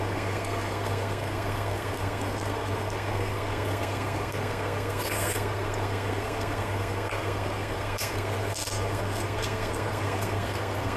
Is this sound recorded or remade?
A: remade